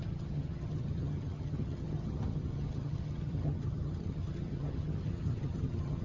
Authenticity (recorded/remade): remade